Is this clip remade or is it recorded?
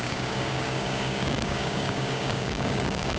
remade